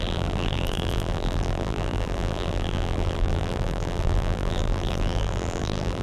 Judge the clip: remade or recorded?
remade